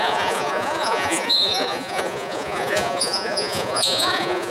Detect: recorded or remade remade